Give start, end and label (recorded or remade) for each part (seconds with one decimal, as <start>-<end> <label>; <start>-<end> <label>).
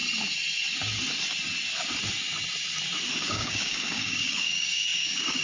0.0-3.2 recorded; 3.2-5.4 remade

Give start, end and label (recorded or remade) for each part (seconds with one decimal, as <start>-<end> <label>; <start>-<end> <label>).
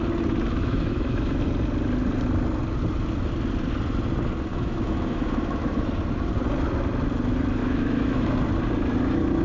0.0-0.6 recorded; 0.6-1.4 remade; 1.4-4.5 recorded; 4.5-5.9 remade; 5.9-7.6 recorded; 7.6-8.3 remade; 8.3-9.4 recorded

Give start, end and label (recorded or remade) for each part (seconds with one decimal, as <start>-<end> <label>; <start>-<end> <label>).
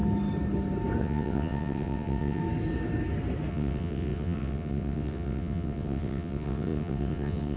0.0-1.0 recorded; 1.0-2.4 remade; 2.4-3.5 recorded; 3.5-7.6 remade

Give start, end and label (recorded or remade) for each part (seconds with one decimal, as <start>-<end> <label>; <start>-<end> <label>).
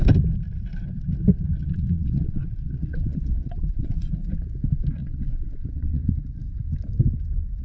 0.0-1.6 recorded; 1.6-4.1 remade; 4.1-5.0 recorded; 5.0-6.1 remade; 6.1-7.6 recorded